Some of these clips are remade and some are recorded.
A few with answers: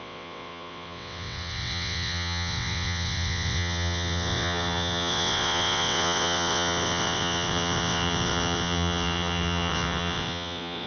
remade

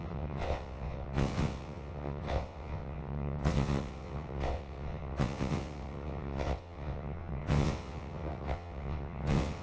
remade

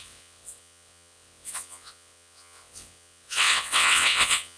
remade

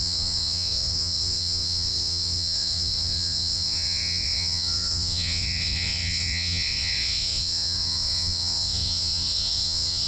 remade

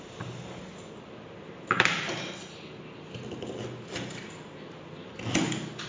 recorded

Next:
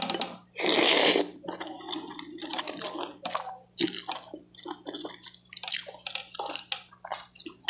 recorded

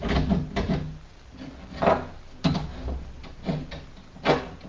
recorded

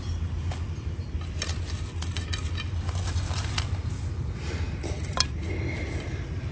recorded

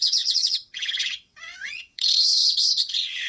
remade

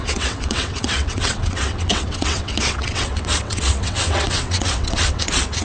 remade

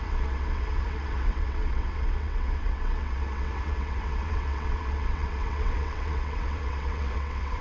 remade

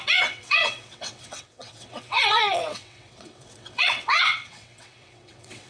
remade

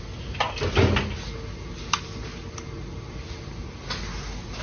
recorded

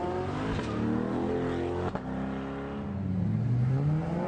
recorded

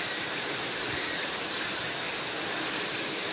recorded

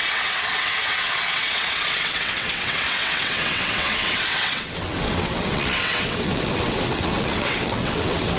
remade